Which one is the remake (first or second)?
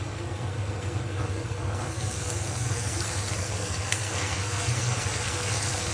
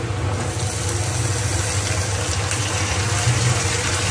first